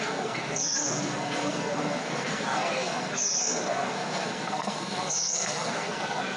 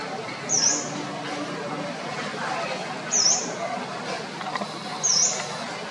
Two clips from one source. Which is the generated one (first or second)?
first